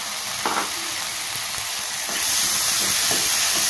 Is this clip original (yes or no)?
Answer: yes